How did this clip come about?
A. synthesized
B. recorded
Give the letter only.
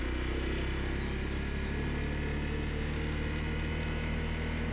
B